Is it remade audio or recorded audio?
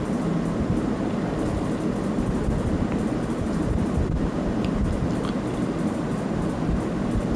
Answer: recorded